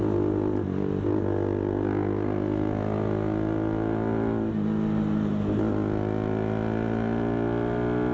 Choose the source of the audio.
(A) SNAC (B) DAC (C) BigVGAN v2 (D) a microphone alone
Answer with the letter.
D